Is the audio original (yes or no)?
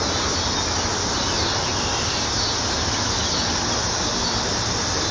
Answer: yes